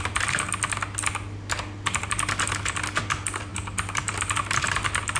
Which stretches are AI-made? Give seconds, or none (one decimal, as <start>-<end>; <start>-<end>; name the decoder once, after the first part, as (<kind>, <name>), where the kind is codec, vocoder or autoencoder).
none